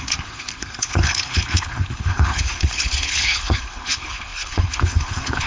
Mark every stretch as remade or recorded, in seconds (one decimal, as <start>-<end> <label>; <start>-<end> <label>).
0.0-5.5 remade